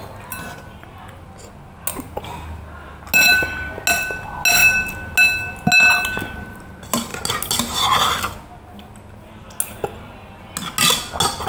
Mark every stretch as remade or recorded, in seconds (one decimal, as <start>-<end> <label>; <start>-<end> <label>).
0.0-11.5 recorded